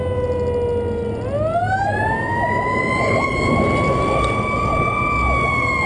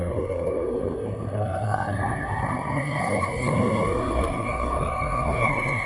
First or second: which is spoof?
second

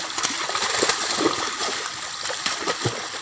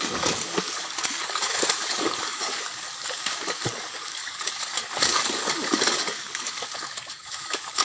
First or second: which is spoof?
second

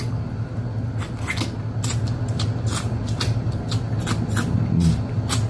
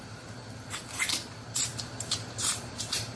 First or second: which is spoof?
second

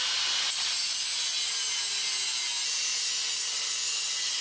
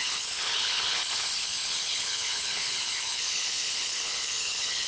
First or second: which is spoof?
second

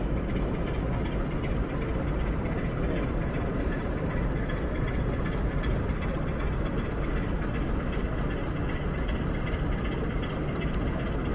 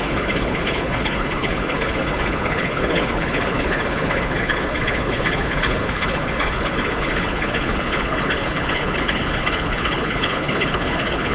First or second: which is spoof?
second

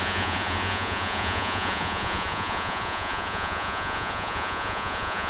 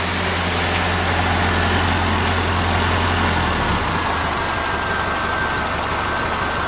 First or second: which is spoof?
first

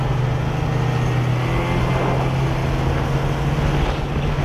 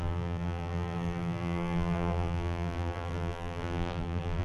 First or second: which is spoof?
second